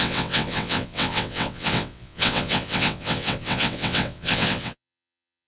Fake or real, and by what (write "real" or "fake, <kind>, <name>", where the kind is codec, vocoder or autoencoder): fake, vocoder, WaveNeXt